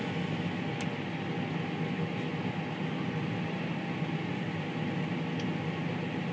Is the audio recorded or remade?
recorded